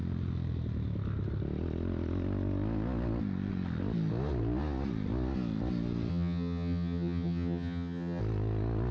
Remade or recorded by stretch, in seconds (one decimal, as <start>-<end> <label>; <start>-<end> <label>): 0.0-6.1 recorded; 6.1-8.2 remade; 8.2-8.9 recorded